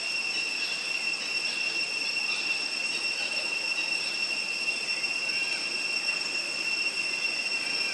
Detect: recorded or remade remade